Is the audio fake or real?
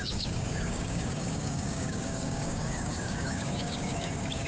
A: fake